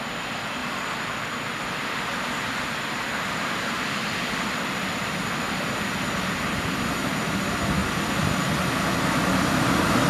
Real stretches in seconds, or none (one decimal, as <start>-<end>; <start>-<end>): 0.0-0.6; 5.3-10.1